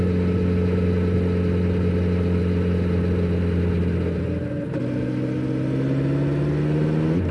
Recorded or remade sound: recorded